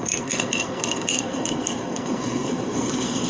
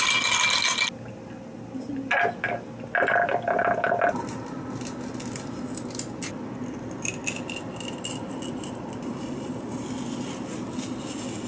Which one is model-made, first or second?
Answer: first